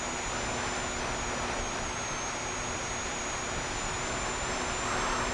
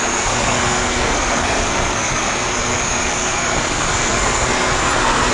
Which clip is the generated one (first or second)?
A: second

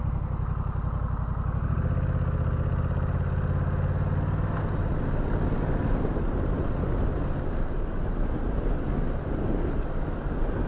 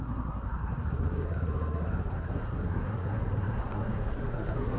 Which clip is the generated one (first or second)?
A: second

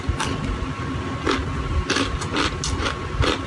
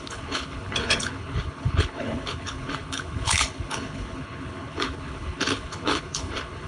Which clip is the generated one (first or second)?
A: second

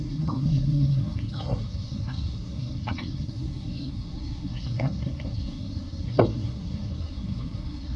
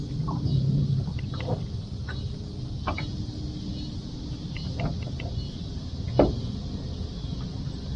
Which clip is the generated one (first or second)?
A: first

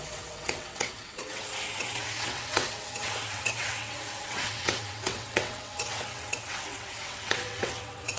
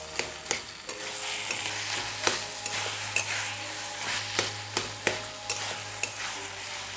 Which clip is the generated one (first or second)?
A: first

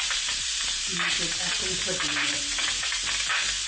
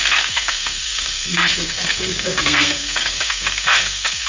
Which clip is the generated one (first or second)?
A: second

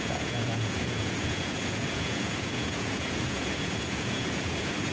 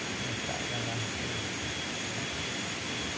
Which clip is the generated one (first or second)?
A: first